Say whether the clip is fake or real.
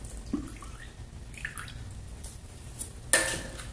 real